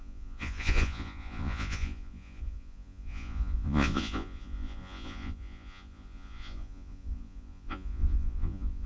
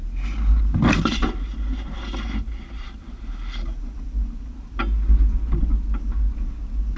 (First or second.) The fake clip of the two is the first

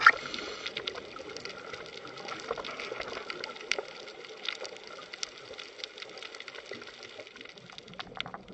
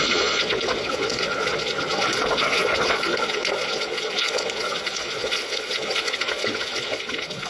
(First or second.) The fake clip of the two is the second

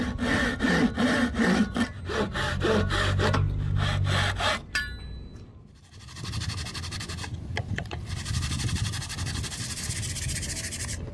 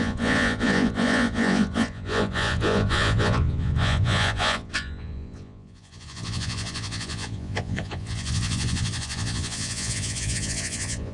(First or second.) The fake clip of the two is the second